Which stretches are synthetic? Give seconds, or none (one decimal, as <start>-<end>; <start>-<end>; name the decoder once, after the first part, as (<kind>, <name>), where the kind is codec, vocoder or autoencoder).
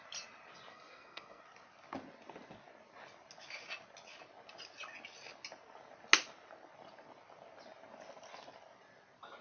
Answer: 0.7-1.4 (codec, SNAC)